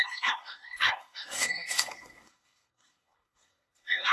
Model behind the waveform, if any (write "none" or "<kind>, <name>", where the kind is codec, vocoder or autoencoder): codec, SNAC